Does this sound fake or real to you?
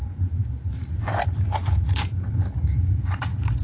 fake